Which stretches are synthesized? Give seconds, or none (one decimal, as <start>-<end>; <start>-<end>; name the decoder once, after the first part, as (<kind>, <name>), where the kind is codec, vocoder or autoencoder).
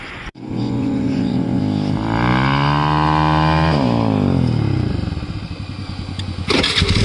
0.0-1.6 (vocoder, Vocos); 5.8-6.5